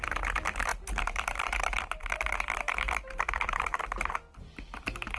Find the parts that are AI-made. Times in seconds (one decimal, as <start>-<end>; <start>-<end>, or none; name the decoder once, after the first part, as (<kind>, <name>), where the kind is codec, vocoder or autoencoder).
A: 0.7-3.8 (vocoder, BigVGAN v2)